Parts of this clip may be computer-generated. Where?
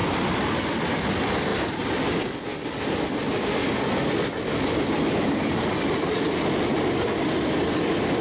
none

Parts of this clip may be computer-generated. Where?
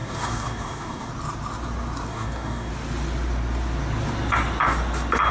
0.0-1.1 (codec, DAC); 2.1-2.7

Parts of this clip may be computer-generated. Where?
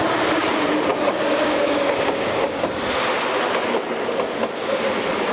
0.9-2.7 (codec, DAC)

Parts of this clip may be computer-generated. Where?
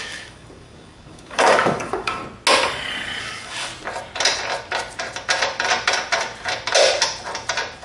0.0-2.2 (codec, DAC); 3.2-3.7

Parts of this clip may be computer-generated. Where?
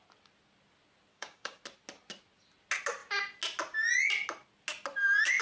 1.1-1.6 (codec, DAC)